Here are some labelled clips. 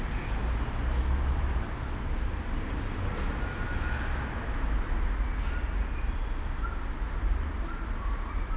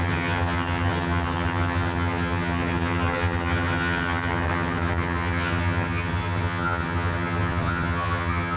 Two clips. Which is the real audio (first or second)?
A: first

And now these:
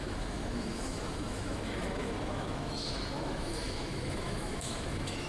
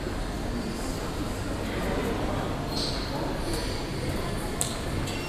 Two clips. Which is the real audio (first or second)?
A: second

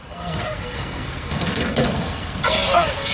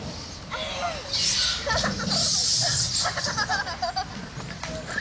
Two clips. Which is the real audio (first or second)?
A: second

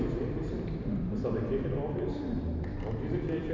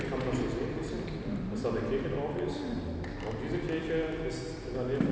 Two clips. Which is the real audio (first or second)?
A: second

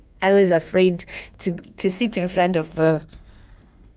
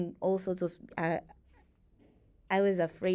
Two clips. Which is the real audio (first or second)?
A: second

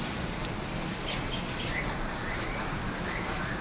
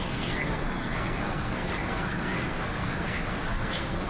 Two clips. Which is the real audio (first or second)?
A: first